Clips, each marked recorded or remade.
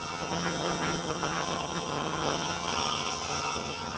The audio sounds remade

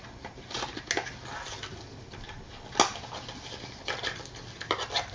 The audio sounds recorded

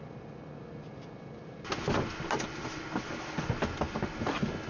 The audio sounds recorded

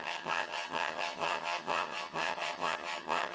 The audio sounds remade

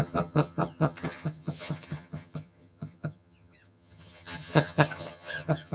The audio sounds remade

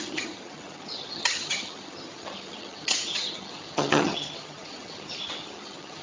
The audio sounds remade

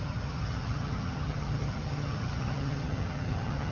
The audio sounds remade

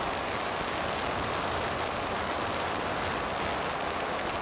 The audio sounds recorded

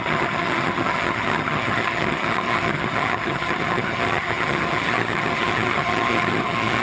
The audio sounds remade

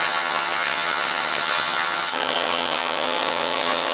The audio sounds remade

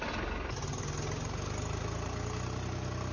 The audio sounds recorded